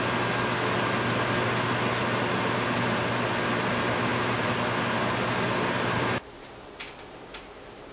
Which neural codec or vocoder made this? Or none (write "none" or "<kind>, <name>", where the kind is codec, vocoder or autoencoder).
none